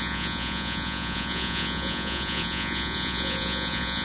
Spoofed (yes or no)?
yes